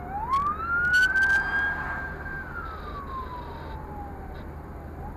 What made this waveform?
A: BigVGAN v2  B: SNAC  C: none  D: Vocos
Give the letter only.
C